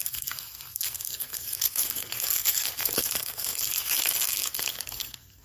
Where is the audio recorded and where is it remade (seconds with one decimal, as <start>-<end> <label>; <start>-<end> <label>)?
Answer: 0.0-5.4 remade